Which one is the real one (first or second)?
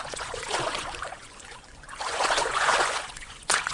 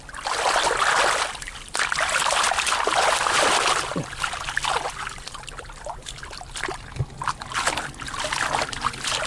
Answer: second